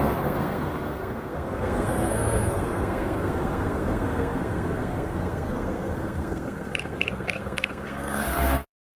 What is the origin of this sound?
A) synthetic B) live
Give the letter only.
A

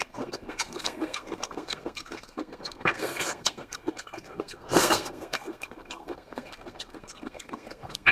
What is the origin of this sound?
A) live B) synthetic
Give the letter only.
B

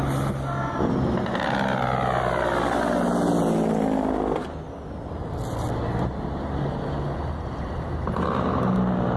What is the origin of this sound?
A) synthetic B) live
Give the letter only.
B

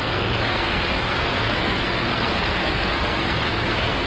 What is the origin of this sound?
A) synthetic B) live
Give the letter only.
A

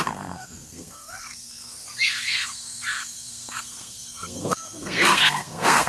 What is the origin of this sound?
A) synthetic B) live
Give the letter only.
A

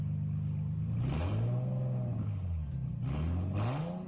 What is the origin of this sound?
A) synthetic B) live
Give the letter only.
B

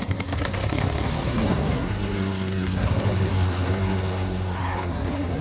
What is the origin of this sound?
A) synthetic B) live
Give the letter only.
A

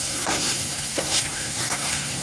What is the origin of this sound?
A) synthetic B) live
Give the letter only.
A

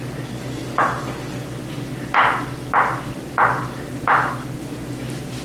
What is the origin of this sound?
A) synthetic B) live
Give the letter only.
B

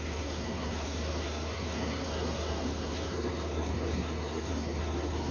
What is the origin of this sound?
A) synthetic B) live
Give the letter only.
A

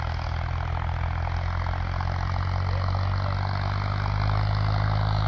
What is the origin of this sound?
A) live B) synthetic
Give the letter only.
A